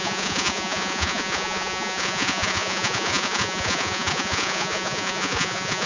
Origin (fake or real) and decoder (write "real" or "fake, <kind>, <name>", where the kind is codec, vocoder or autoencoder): fake, vocoder, Vocos